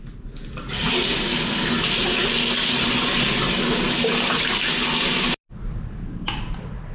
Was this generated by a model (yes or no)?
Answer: no